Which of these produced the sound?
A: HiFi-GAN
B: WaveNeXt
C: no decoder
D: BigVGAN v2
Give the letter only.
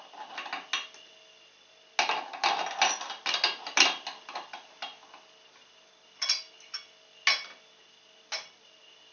C